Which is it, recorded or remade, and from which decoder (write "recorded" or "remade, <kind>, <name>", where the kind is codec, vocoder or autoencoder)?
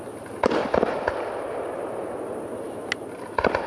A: recorded